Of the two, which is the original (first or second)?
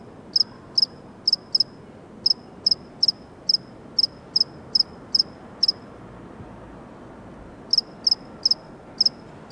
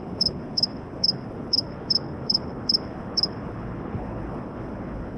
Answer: first